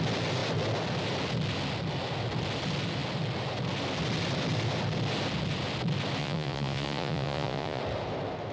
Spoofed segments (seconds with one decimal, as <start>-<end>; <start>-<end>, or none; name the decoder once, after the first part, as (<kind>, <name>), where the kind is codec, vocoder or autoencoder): 6.2-7.8 (vocoder, Vocos)